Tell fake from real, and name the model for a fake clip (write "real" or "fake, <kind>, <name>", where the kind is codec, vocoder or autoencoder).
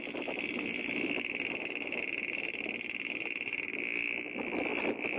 real